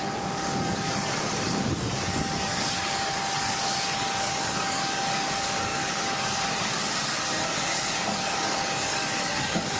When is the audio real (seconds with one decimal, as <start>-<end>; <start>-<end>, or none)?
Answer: none